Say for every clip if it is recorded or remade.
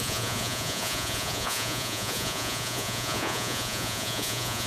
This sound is remade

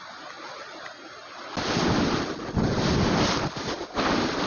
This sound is recorded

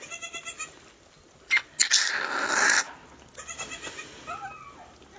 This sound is recorded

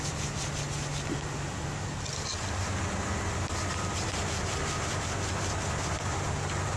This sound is recorded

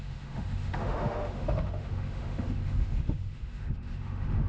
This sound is remade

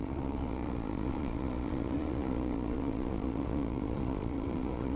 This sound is remade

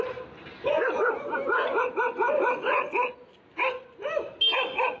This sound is recorded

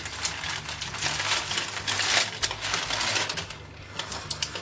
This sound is recorded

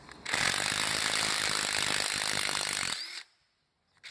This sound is recorded